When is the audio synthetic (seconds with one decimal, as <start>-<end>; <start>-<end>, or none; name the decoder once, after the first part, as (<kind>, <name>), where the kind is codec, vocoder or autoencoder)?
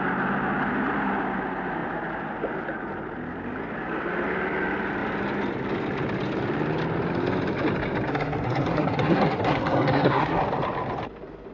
8.1-10.4 (codec, SNAC)